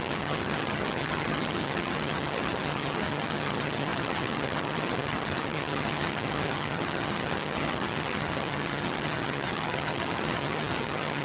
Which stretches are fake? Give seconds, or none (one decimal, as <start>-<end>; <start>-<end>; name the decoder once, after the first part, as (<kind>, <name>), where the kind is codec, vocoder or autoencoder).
0.0-11.2 (vocoder, HiFi-GAN)